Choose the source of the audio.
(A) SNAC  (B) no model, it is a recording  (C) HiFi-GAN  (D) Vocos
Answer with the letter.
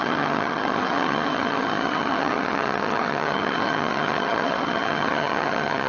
C